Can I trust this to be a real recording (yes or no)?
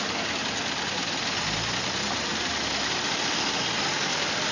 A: yes